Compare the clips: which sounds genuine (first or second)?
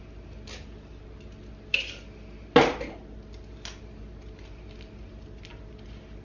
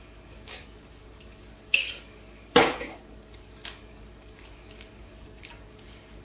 first